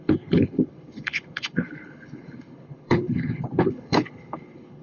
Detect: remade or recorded remade